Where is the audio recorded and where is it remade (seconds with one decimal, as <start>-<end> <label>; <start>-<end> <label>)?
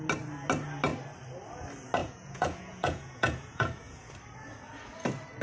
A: 0.0-2.0 recorded; 2.0-4.1 remade; 4.1-5.4 recorded